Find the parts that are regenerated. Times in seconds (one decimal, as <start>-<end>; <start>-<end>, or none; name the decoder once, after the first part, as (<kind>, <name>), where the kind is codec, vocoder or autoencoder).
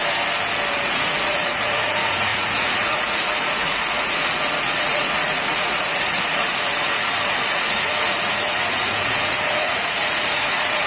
0.7-10.9 (vocoder, Vocos)